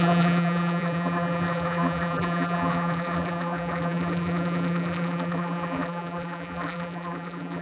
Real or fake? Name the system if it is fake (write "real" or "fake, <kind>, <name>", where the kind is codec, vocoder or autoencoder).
fake, vocoder, BigVGAN v2